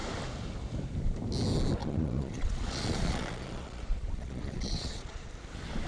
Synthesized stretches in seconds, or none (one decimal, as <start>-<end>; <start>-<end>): 1.8-5.3